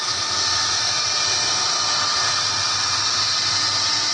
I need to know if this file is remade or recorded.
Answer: recorded